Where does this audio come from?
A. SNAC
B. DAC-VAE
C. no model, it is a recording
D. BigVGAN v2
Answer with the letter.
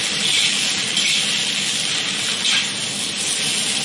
C